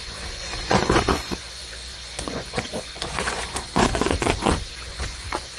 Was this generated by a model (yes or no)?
yes